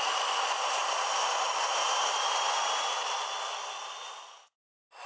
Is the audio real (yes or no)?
yes